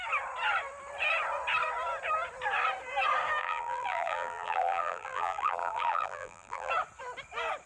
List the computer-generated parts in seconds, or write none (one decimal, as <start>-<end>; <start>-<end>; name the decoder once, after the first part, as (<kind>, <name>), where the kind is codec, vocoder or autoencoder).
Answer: 3.4-6.7 (vocoder, BigVGAN v2)